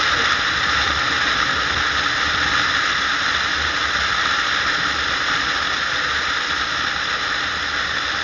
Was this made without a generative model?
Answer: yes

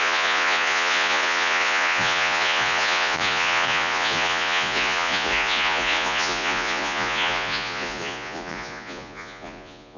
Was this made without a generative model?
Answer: no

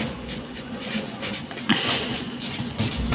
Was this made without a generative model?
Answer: no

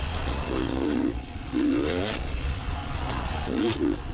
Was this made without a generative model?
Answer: no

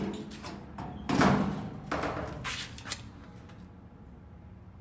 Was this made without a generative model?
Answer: yes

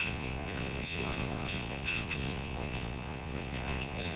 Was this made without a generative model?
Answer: no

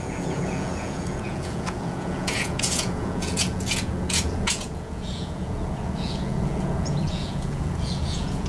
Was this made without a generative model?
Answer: no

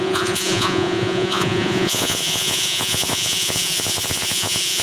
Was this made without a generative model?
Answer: no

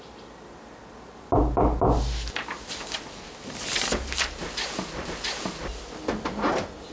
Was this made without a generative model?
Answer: yes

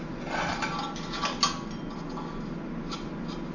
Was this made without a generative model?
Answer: yes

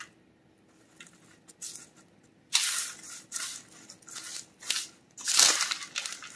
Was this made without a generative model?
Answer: yes